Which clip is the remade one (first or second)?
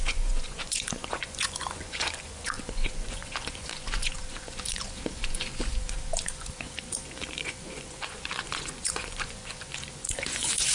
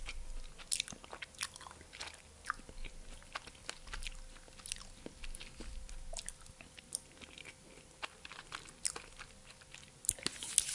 first